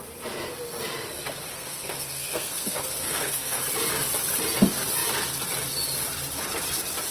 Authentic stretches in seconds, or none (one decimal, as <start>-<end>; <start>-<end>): 0.0-1.5; 3.6-7.1